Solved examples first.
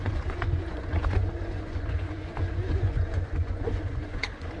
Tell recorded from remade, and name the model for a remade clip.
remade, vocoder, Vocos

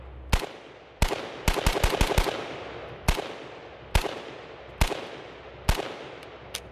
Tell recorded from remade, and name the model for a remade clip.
recorded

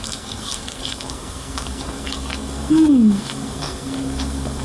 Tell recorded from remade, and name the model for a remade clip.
remade, codec, SNAC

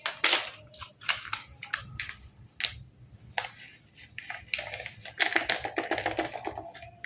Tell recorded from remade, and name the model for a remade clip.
recorded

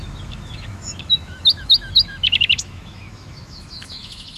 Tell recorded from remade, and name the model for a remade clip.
remade, autoencoder, DAC-VAE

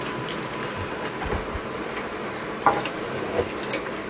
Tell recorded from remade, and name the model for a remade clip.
recorded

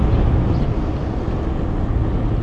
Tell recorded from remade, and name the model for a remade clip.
recorded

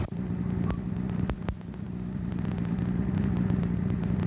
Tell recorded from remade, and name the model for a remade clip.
recorded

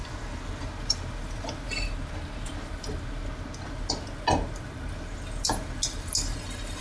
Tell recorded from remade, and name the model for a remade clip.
recorded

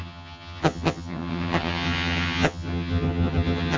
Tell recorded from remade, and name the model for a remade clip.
remade, vocoder, HiFi-GAN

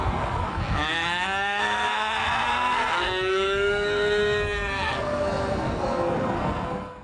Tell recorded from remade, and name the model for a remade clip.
remade, codec, SNAC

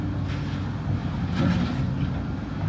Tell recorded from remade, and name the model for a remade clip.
recorded